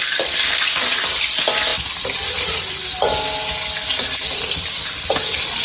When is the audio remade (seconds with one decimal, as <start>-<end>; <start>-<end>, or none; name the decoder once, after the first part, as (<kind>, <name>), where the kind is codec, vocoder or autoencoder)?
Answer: none